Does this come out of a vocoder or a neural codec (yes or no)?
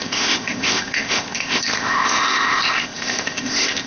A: yes